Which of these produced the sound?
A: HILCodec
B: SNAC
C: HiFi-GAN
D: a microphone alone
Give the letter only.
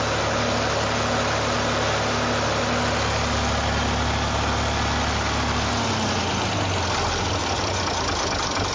D